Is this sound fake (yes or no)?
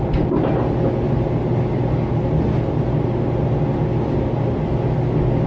no